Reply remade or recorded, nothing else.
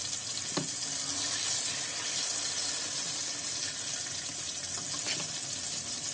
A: recorded